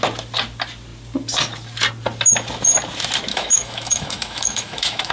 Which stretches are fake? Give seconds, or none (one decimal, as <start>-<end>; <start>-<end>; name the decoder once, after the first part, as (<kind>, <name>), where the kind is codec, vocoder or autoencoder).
3.3-5.1 (autoencoder, DAC-VAE)